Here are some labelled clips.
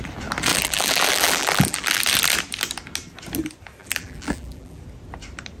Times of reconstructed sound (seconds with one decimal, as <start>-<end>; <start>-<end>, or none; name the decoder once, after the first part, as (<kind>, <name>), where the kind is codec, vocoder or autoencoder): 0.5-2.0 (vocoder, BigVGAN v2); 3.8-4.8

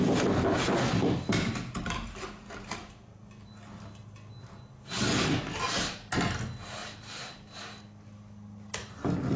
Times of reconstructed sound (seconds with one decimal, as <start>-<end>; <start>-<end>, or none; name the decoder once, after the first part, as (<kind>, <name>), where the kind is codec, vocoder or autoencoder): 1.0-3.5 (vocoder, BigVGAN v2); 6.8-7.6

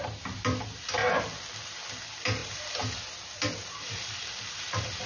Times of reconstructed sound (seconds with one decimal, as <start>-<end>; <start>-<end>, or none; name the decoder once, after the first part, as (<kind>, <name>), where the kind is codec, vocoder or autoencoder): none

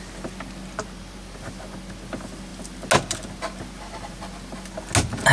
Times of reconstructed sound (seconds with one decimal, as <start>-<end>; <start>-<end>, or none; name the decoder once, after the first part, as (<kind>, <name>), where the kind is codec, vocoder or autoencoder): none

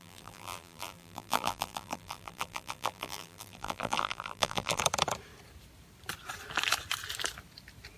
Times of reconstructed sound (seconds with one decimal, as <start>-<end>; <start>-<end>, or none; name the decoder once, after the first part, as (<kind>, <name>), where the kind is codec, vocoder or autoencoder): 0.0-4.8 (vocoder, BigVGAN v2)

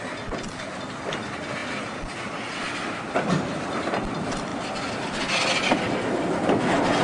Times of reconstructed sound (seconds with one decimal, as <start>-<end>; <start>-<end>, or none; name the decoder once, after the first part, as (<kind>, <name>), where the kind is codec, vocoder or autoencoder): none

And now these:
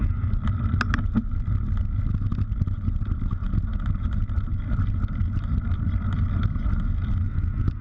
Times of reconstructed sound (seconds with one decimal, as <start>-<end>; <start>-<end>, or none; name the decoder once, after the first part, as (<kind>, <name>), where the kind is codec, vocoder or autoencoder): 0.0-0.8 (vocoder, BigVGAN v2)

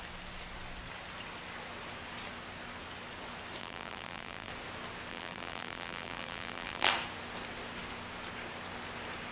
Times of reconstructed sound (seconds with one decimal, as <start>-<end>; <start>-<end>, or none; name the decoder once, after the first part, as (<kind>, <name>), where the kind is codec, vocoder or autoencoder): 3.6-4.5 (vocoder, BigVGAN v2); 5.1-6.9